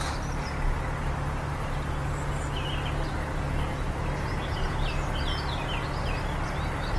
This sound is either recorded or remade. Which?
recorded